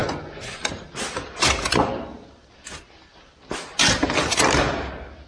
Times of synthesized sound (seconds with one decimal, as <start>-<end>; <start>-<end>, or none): 0.0-0.6